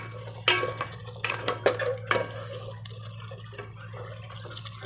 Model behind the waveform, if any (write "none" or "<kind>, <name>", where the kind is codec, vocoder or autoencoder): none